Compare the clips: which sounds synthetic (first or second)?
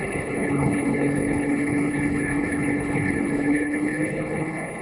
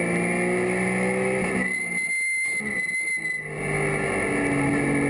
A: first